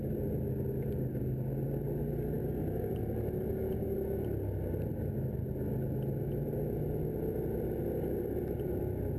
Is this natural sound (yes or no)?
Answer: yes